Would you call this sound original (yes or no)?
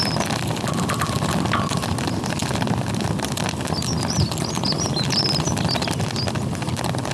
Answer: yes